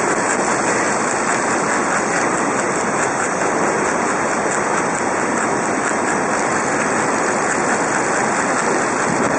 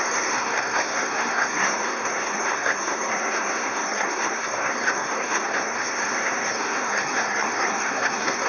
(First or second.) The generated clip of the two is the second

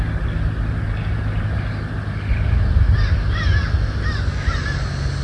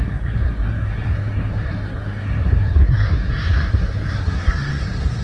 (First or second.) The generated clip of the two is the second